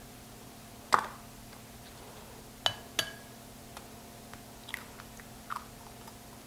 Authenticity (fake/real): real